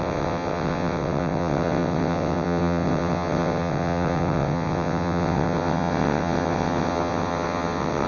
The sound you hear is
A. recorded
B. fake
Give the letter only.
B